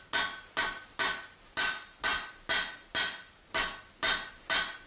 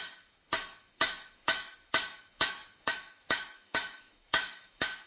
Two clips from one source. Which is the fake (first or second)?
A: second